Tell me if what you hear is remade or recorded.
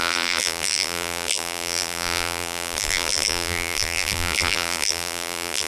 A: remade